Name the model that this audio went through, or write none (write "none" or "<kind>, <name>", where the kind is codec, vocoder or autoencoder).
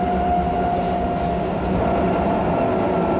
none